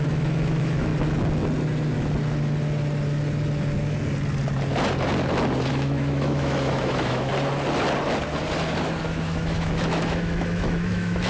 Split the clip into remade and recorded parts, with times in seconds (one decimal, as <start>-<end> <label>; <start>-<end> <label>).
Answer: 0.0-0.9 remade; 0.9-5.7 recorded; 5.7-7.3 remade; 7.3-9.0 recorded; 9.0-11.3 remade